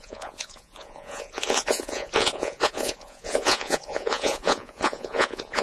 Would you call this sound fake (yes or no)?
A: yes